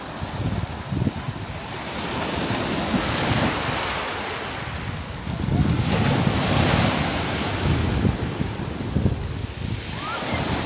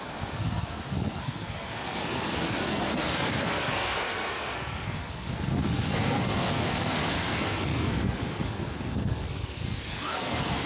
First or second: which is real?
first